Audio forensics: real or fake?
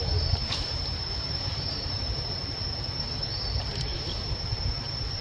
fake